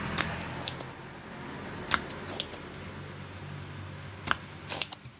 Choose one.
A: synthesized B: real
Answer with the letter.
B